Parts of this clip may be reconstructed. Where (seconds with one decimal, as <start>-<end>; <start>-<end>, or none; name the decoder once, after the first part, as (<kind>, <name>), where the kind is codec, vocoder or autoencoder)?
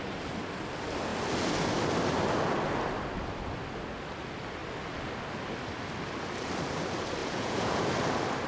7.2-7.8 (vocoder, Vocos)